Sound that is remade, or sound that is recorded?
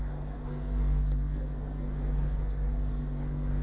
remade